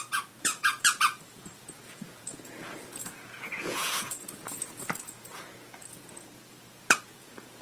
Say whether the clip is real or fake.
fake